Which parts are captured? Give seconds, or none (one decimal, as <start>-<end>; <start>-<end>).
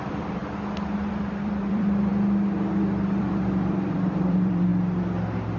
0.4-1.1; 2.1-3.2; 4.7-5.6